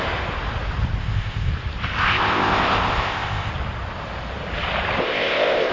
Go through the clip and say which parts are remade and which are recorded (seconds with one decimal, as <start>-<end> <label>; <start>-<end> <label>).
0.0-1.0 recorded; 1.0-1.5 remade; 1.5-2.0 recorded; 2.0-3.5 remade; 3.5-5.0 recorded; 5.0-5.7 remade